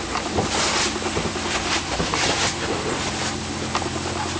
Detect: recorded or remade recorded